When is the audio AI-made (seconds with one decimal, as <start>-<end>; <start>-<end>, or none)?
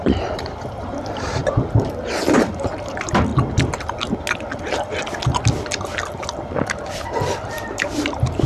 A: 0.0-1.4; 2.4-3.3; 7.5-8.5